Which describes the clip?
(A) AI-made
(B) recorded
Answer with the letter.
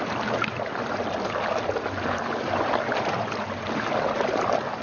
B